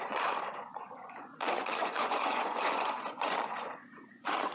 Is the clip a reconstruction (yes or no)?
yes